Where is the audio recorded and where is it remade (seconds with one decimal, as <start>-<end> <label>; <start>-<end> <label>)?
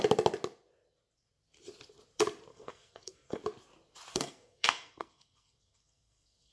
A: 0.0-2.5 recorded; 2.5-3.4 remade; 3.4-4.1 recorded; 4.1-6.5 remade